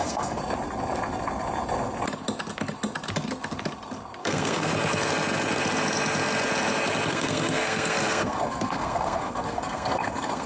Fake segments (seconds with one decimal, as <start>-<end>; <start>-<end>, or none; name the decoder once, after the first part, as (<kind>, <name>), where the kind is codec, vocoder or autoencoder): 0.0-0.4 (codec, SNAC); 4.2-4.7; 7.1-10.5